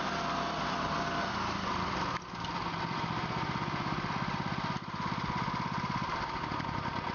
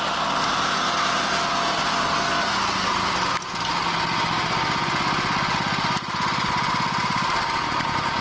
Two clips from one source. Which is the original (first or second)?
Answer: second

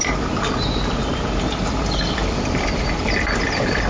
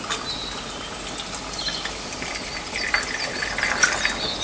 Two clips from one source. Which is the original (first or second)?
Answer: second